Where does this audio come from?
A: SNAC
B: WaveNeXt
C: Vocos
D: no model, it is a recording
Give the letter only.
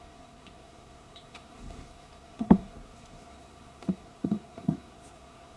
A